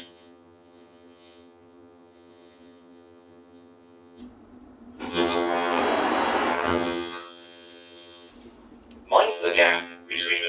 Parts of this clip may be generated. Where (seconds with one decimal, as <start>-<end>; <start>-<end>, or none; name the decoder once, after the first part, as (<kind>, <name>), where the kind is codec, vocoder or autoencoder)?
0.0-4.2 (vocoder, HiFi-GAN); 5.1-5.8; 6.5-8.3; 9.3-10.5